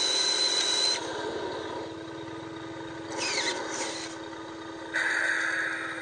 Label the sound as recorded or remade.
recorded